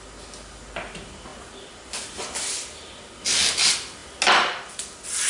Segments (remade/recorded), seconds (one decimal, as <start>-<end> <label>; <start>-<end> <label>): 0.0-5.3 recorded